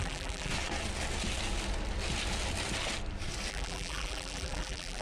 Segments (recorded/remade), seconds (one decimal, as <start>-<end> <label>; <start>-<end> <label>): 0.0-0.5 remade; 0.5-3.5 recorded; 3.5-5.0 remade